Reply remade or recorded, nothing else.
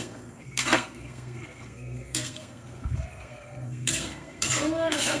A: remade